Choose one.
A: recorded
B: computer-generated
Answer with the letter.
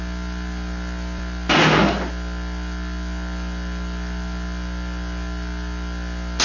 A